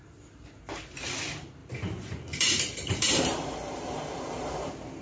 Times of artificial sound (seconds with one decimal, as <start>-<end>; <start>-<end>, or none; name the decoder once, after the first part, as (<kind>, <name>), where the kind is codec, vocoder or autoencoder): 1.6-4.1 (vocoder, BigVGAN v2)